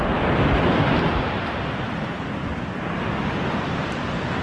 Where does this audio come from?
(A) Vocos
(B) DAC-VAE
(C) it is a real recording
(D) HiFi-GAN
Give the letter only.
C